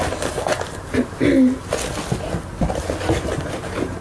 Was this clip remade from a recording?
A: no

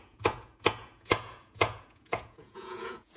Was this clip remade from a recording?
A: yes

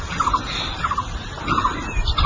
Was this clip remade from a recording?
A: no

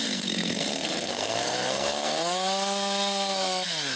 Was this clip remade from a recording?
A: yes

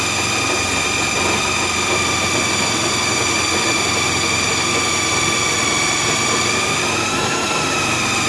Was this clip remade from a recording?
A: no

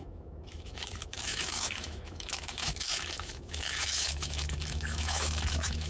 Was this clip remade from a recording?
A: yes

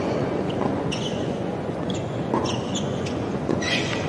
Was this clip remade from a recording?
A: yes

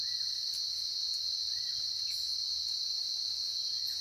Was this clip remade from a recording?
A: no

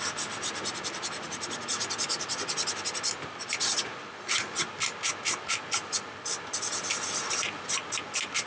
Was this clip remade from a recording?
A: no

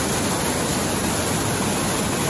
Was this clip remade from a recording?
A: no